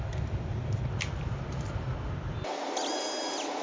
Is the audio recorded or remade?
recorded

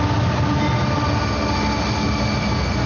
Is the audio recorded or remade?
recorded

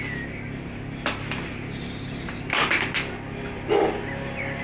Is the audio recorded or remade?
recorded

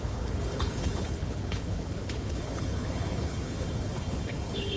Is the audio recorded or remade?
remade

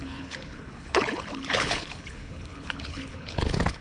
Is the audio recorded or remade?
remade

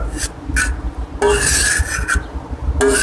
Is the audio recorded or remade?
recorded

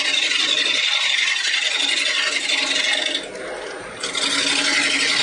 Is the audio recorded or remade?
recorded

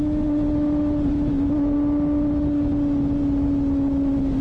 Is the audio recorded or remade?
recorded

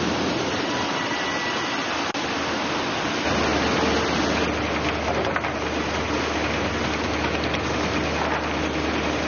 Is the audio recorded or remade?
recorded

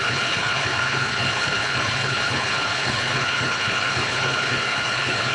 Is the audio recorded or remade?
remade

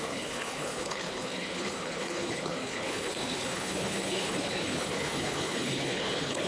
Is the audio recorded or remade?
remade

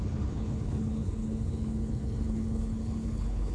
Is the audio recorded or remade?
remade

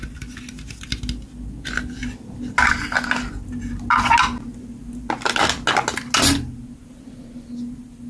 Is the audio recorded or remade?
recorded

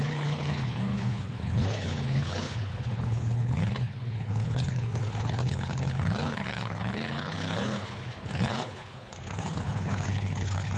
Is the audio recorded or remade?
remade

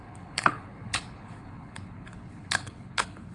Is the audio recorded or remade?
remade